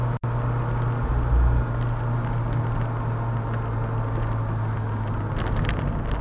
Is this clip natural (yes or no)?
yes